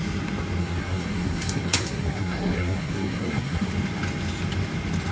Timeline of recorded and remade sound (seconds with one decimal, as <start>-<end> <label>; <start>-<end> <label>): 0.0-0.6 recorded; 0.6-3.7 remade; 3.7-5.1 recorded